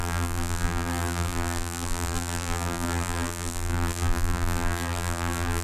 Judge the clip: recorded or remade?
remade